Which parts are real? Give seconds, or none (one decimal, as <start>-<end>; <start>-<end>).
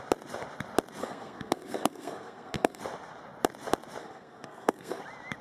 0.0-1.0; 2.8-4.0; 5.0-5.4